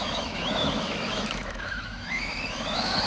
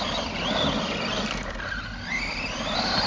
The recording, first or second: second